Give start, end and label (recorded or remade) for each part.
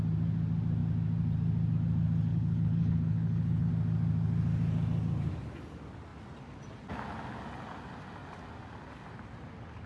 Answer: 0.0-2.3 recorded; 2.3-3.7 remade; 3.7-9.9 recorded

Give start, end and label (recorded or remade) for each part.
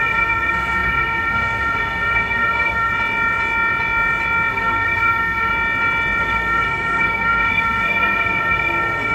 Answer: 0.0-2.9 remade; 2.9-4.5 recorded; 4.5-5.5 remade; 5.5-6.2 recorded; 6.2-9.1 remade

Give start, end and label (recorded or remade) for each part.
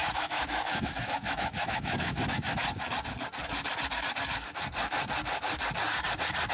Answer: 0.0-2.6 remade; 2.6-6.5 recorded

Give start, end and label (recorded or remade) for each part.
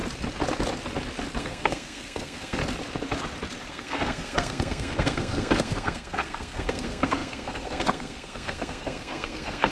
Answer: 0.0-1.4 recorded; 1.4-2.6 remade; 2.6-3.7 recorded; 3.7-9.7 remade